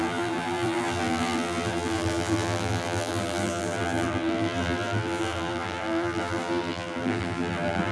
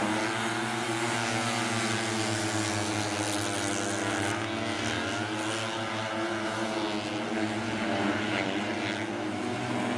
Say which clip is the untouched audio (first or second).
second